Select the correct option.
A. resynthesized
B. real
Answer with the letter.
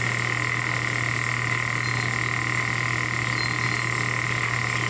B